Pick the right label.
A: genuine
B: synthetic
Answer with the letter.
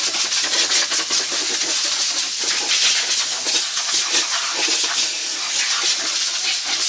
A